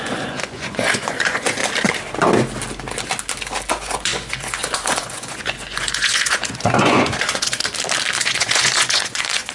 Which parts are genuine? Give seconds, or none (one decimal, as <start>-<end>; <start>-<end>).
1.6-3.7; 7.6-8.2